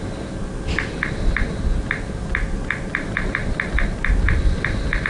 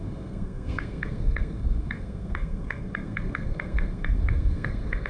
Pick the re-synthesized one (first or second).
second